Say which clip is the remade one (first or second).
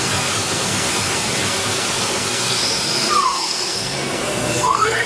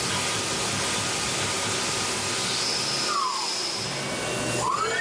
first